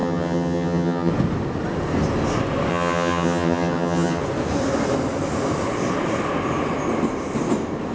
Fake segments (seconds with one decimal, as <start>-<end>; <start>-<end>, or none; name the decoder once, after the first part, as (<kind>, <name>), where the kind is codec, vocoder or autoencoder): 0.0-1.1 (vocoder, HiFi-GAN); 2.7-4.2